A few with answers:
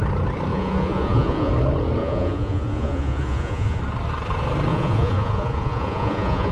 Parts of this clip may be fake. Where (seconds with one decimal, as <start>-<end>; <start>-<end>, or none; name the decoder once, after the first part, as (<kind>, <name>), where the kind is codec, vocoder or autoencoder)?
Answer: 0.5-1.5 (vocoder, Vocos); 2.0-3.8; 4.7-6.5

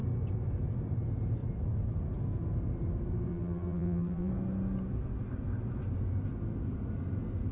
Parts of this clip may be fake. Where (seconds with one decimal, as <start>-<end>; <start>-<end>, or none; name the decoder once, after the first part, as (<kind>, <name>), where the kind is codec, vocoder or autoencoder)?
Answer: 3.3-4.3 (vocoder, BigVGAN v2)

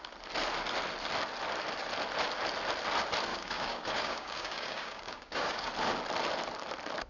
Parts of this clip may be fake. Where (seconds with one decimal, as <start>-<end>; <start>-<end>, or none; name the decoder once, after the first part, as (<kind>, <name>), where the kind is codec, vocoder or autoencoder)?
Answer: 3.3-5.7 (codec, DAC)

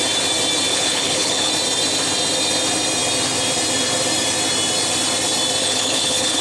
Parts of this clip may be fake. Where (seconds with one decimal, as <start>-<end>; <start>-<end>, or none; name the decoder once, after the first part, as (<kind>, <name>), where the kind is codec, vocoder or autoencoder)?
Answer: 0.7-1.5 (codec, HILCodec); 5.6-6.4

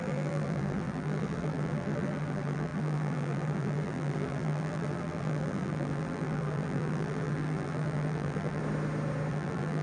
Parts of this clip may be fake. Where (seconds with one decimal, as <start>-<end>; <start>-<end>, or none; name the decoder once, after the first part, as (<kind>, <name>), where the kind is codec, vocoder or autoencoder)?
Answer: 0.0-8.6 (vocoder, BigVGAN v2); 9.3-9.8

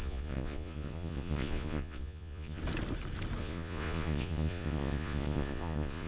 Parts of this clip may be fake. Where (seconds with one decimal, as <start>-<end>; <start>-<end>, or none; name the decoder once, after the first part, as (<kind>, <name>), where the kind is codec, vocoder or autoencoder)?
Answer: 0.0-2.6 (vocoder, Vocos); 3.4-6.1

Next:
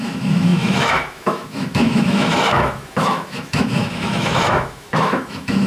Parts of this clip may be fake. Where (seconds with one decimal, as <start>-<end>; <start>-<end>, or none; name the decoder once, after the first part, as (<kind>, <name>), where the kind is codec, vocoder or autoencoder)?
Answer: 0.0-5.7 (autoencoder, DAC-VAE)